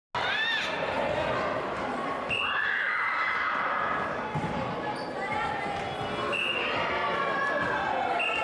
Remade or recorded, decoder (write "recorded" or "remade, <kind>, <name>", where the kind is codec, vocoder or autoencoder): recorded